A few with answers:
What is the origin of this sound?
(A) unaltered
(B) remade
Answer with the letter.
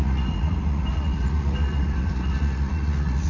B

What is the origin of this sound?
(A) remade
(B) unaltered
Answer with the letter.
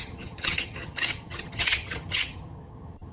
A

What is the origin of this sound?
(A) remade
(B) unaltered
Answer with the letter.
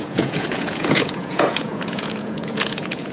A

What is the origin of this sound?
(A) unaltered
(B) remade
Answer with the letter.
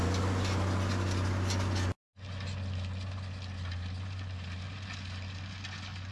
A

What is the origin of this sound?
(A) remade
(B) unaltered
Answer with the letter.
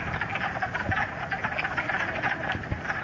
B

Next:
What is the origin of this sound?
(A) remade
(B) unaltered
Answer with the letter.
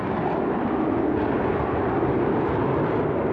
B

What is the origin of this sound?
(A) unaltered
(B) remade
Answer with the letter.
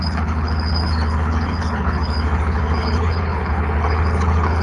B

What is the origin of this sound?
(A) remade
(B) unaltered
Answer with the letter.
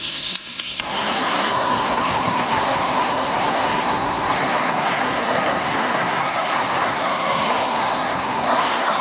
A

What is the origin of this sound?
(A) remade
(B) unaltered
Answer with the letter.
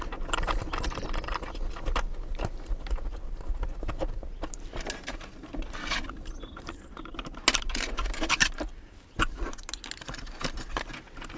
B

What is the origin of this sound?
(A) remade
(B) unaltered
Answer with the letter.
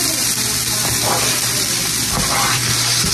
B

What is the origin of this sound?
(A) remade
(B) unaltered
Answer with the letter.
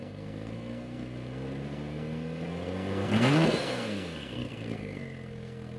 A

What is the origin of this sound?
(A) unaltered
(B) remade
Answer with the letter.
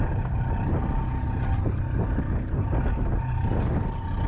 A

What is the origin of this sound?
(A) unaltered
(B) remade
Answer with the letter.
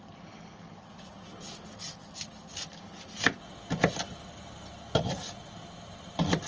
A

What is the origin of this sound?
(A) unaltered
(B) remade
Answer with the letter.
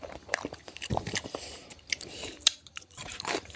B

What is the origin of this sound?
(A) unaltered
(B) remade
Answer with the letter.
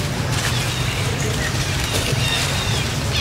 A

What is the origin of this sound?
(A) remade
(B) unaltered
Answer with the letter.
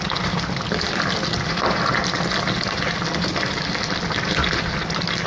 B